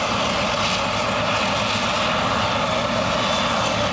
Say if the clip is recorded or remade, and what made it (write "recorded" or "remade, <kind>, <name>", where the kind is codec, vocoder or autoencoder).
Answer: recorded